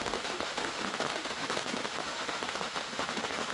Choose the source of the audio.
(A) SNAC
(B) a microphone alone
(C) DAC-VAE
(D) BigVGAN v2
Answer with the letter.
C